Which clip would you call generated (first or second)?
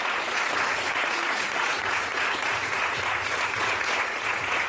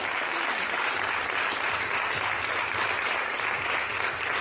first